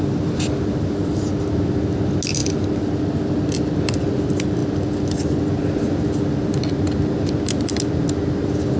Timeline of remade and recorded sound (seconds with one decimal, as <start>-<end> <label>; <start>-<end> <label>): 0.0-8.8 recorded